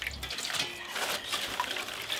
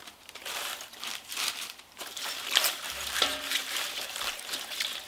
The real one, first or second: first